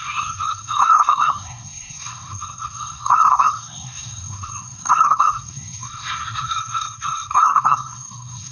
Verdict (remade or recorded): remade